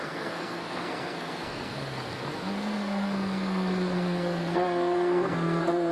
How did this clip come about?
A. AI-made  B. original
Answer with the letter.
A